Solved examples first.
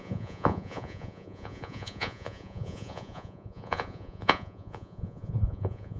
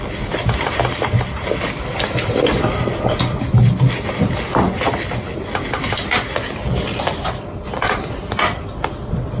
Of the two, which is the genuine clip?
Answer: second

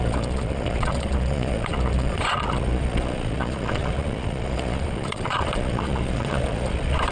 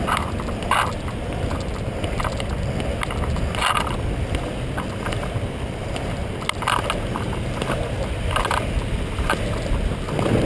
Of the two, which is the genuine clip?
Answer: second